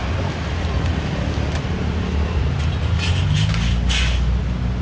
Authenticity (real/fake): real